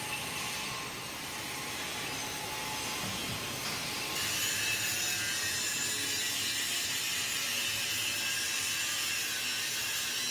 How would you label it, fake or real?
real